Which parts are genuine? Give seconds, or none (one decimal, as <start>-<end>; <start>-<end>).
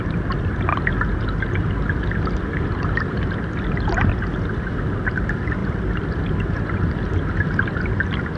0.0-5.6; 7.5-8.4